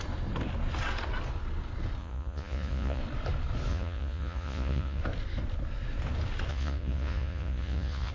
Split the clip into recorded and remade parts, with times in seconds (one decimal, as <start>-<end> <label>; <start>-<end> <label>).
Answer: 0.0-2.0 recorded; 2.0-3.0 remade; 3.0-3.7 recorded; 3.7-5.0 remade; 5.0-6.5 recorded; 6.5-8.1 remade